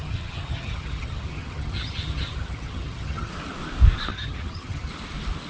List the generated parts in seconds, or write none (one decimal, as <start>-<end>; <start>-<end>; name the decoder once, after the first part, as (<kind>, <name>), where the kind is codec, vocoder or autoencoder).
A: 0.0-3.3 (vocoder, HiFi-GAN); 4.1-4.9